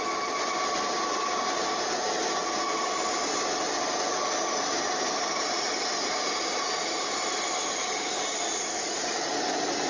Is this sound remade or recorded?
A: recorded